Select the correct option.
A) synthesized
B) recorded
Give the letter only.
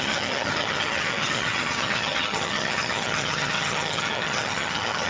A